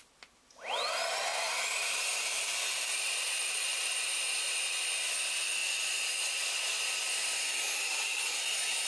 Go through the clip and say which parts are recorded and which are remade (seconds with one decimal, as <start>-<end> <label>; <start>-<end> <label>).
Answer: 0.0-1.3 recorded; 1.3-4.1 remade; 4.1-8.9 recorded